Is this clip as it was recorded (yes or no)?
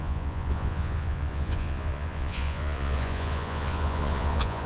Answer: no